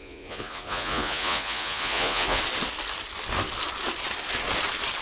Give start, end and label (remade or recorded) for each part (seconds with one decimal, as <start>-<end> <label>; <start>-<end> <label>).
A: 0.0-2.4 remade; 2.4-5.0 recorded